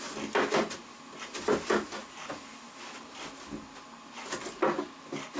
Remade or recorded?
recorded